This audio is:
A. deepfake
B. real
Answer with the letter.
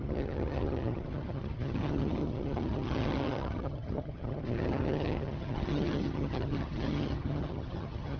A